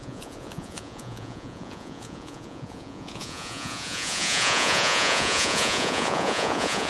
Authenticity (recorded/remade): remade